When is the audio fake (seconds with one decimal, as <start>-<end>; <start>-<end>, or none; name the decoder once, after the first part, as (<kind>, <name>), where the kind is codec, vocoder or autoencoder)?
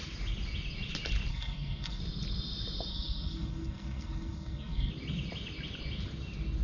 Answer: 1.3-2.0 (codec, SNAC); 2.9-4.9